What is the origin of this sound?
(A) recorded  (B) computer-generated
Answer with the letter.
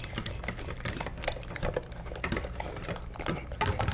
A